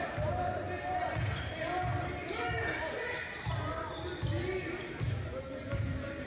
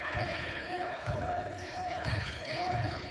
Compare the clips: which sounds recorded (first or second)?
first